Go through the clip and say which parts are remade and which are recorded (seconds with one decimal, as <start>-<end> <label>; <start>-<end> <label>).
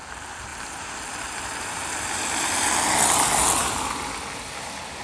0.0-0.5 recorded; 0.5-2.7 remade; 2.7-3.6 recorded; 3.6-5.0 remade